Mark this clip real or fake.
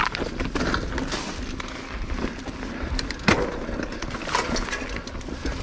real